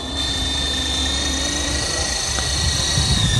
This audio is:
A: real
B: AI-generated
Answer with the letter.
A